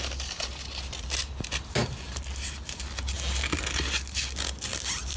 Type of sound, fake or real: real